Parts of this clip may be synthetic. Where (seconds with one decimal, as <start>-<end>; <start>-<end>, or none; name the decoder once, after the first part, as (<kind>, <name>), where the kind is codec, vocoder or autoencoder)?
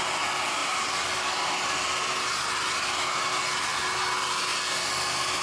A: none